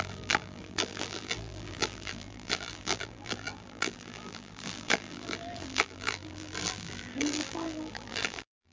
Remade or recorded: remade